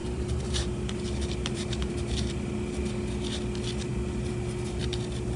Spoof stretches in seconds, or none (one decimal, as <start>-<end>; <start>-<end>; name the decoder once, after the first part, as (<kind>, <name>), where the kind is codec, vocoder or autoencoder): 0.0-2.5 (vocoder, BigVGAN v2)